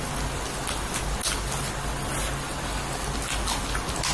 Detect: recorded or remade recorded